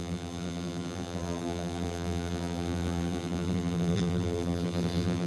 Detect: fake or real fake